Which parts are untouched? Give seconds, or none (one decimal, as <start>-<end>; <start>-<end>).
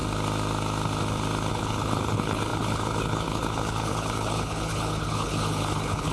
0.0-1.5